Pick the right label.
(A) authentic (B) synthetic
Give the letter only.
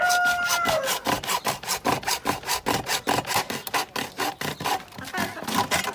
A